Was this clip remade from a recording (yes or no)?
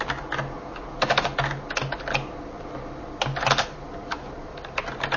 no